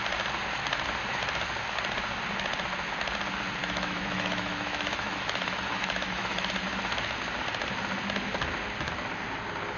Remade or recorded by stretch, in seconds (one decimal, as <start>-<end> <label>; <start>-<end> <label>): 0.0-3.6 recorded; 3.6-6.5 remade; 6.5-9.8 recorded